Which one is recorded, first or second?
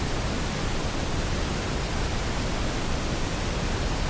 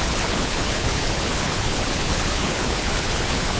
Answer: first